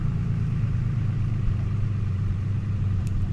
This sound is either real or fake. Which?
fake